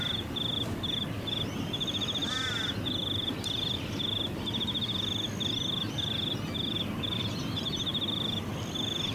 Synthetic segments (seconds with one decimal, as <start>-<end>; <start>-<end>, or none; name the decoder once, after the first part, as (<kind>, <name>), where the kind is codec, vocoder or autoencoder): none